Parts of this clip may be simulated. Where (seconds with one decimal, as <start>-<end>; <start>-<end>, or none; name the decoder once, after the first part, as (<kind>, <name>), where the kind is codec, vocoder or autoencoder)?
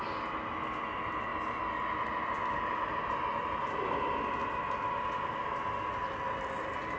none